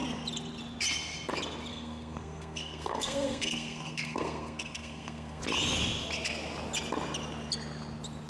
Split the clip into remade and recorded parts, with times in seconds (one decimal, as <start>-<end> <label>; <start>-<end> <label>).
0.0-1.7 recorded; 1.7-5.4 remade; 5.4-8.3 recorded

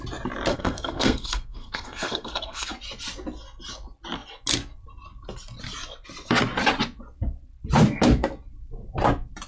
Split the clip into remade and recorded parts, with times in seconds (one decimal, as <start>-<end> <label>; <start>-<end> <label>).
0.0-0.5 recorded; 0.5-2.7 remade; 2.7-9.5 recorded

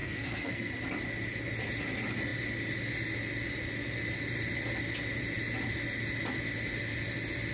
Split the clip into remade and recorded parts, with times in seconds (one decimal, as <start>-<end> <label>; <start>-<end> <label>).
0.0-0.7 remade; 0.7-7.5 recorded

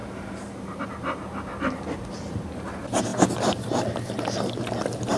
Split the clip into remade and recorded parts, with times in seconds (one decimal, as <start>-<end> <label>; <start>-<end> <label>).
0.0-0.8 remade; 0.8-5.2 recorded

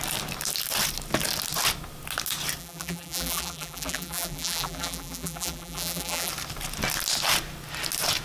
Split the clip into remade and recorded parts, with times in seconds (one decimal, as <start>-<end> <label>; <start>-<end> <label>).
0.0-2.6 recorded; 2.6-6.3 remade; 6.3-8.2 recorded

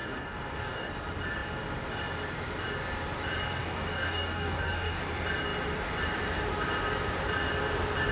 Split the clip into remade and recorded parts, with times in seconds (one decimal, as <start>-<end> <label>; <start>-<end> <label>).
0.0-0.9 remade; 0.9-3.6 recorded; 3.6-5.0 remade; 5.0-8.1 recorded

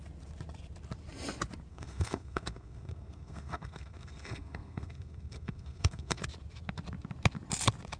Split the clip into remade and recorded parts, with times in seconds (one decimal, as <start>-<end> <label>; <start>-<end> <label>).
0.0-1.7 recorded; 1.7-6.2 remade; 6.2-8.0 recorded